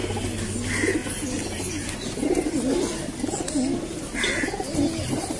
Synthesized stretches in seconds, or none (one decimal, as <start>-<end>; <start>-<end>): none